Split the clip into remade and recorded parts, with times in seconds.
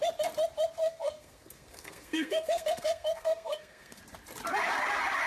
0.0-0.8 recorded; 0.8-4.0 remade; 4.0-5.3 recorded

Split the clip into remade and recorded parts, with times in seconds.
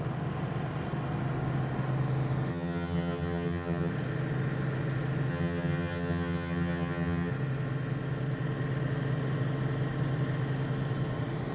0.0-2.5 recorded; 2.5-3.9 remade; 3.9-5.3 recorded; 5.3-7.3 remade; 7.3-11.5 recorded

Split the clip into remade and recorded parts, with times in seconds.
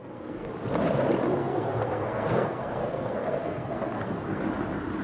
0.0-0.5 remade; 0.5-1.4 recorded; 1.4-4.4 remade; 4.4-5.0 recorded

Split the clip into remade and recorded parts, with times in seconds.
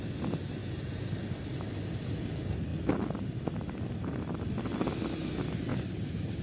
0.0-6.4 recorded